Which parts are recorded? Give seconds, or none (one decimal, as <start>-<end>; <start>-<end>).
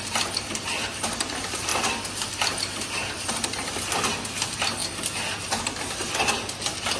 0.0-7.0